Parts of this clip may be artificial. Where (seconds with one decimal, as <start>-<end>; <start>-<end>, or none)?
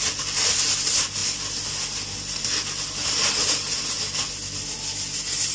none